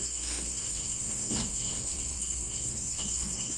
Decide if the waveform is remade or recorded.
remade